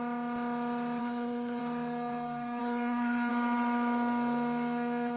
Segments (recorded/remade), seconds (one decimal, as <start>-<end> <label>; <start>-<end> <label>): 0.0-1.0 recorded; 1.0-1.6 remade; 1.6-2.6 recorded; 2.6-3.3 remade; 3.3-5.2 recorded